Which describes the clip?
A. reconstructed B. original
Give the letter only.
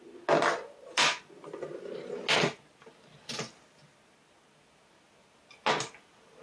B